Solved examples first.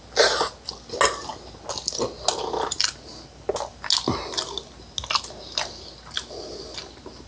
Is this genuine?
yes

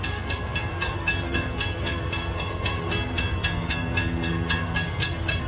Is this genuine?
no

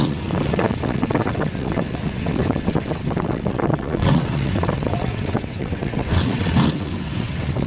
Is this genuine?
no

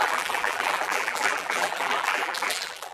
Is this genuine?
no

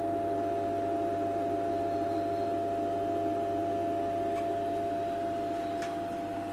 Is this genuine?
yes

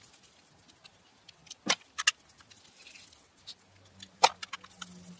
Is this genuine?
yes